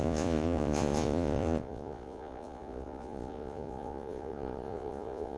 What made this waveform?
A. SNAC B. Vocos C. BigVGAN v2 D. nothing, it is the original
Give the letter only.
B